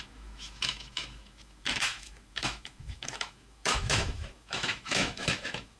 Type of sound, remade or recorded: remade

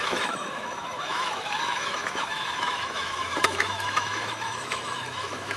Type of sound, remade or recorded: remade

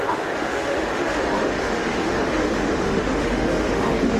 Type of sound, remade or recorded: remade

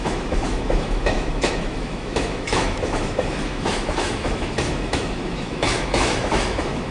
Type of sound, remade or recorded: remade